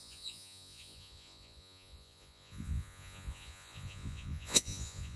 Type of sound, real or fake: fake